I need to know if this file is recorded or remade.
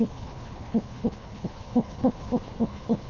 remade